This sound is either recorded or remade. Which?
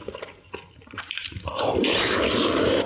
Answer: remade